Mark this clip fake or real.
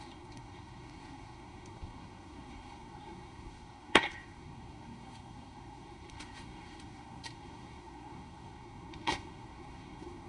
fake